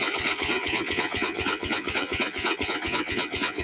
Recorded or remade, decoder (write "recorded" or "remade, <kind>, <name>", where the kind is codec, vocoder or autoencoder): remade, vocoder, Vocos